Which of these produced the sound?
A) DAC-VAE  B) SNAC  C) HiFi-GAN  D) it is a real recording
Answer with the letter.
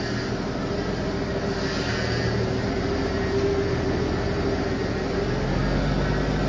D